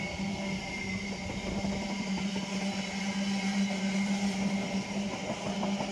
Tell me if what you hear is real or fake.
real